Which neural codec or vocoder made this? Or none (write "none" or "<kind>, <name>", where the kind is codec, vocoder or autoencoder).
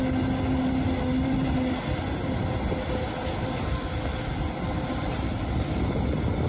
none